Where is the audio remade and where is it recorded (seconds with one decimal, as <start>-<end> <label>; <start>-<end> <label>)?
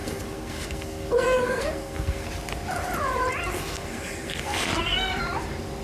0.0-2.3 remade; 2.3-3.5 recorded; 3.5-5.2 remade; 5.2-5.8 recorded